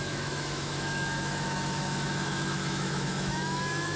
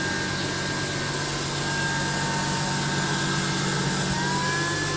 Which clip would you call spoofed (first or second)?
first